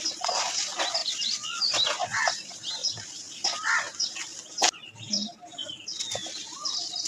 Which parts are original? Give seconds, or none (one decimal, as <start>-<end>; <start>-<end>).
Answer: 0.0-1.0; 1.6-2.8